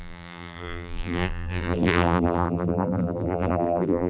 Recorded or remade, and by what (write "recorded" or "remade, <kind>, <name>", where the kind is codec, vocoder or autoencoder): remade, vocoder, BigVGAN v2